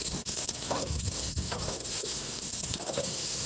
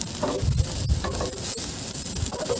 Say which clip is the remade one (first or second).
first